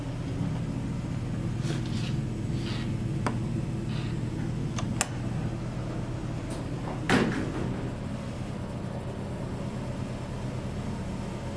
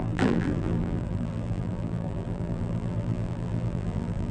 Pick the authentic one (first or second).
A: first